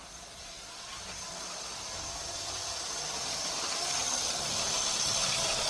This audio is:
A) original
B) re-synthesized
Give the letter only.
A